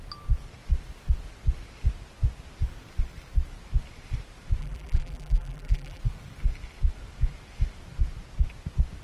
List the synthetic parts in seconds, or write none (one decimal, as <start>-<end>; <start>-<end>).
4.6-6.0